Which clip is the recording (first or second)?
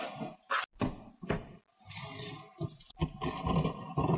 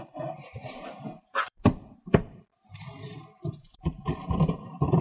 first